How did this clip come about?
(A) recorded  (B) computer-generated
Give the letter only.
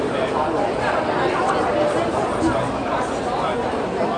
A